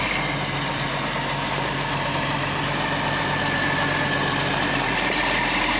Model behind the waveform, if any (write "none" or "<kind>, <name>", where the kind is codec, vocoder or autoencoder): none